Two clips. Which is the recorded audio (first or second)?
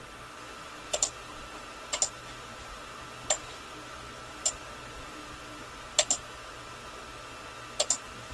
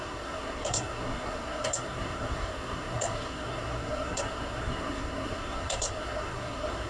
first